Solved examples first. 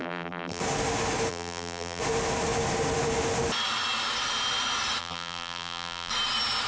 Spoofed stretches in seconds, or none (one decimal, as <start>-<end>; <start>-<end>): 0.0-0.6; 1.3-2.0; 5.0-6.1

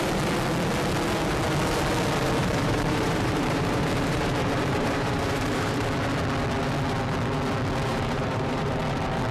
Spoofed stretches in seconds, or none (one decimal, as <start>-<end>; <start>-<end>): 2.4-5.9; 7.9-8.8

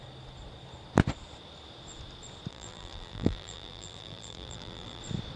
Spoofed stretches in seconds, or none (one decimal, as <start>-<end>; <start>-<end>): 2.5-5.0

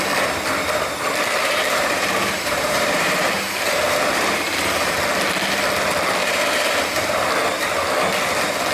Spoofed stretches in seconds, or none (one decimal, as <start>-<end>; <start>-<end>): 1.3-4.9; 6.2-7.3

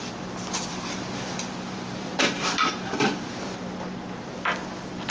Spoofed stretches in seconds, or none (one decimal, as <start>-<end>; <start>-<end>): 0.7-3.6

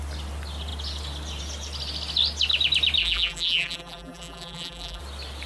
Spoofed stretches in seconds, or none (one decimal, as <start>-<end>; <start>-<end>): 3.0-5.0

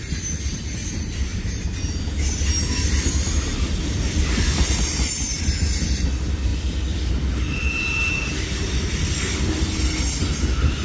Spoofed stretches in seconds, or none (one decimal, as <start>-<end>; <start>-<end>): 1.3-2.0; 3.5-5.8; 6.5-7.1

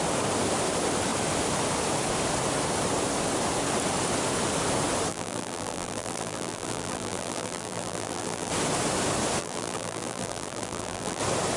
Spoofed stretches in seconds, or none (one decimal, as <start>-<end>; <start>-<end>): 5.1-8.5; 9.4-11.2